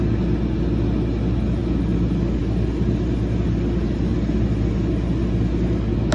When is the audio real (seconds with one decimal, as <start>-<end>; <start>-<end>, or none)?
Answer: 0.0-6.1